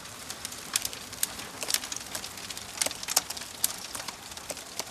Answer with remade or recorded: remade